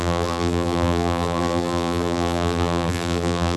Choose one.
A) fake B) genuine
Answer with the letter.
A